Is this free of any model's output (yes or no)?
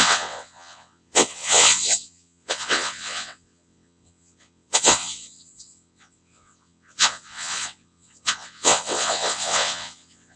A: no